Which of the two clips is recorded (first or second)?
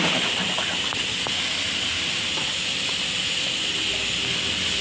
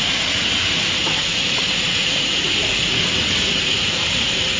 first